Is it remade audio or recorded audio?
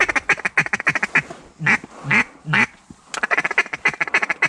recorded